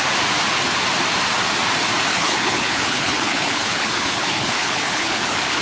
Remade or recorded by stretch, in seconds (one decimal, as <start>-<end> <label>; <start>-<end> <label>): 0.0-2.1 recorded; 2.1-5.6 remade